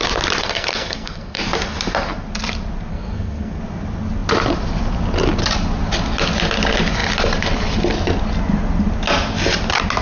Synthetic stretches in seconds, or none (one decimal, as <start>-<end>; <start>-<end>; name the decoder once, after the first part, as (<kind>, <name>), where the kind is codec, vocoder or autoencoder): 0.4-1.4 (codec, SNAC); 2.9-3.6